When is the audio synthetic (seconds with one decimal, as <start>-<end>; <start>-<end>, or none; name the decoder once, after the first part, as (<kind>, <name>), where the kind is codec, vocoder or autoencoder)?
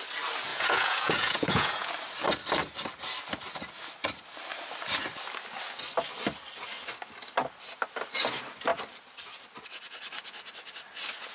0.5-1.9 (vocoder, Vocos)